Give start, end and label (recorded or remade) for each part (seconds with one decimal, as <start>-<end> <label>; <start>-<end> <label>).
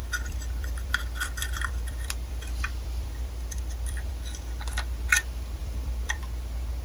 0.0-4.1 remade; 4.1-5.6 recorded; 5.6-6.2 remade; 6.2-6.8 recorded